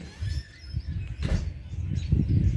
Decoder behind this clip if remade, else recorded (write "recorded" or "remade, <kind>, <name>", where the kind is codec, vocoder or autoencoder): recorded